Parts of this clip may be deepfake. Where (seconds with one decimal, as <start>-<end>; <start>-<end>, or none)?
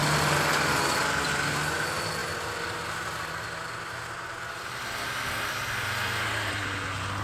none